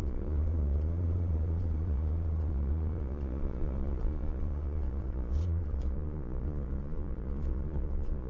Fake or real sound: fake